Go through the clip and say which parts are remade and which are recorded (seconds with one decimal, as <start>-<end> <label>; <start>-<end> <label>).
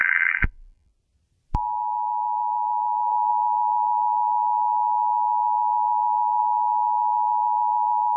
0.0-0.9 remade; 0.9-8.2 recorded